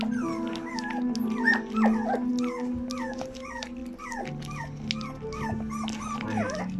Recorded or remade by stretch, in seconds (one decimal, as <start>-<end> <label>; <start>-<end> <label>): 0.0-6.8 recorded